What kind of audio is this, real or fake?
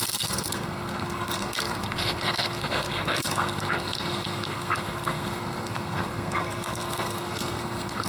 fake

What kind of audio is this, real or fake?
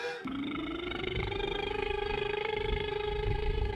fake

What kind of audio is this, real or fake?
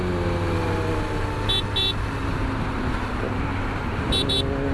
real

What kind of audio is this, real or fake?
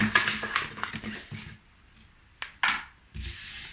real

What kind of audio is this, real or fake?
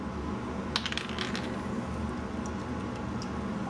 real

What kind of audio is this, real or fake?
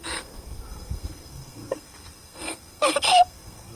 fake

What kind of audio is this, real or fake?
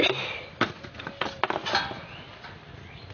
real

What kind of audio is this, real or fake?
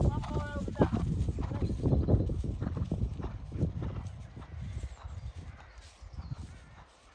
real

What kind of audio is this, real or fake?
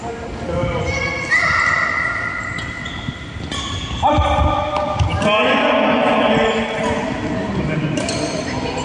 real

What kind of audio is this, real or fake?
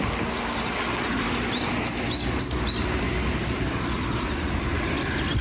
real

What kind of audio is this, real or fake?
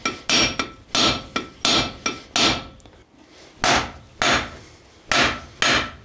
real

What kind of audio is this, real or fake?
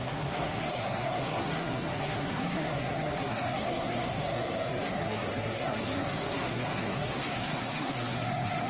fake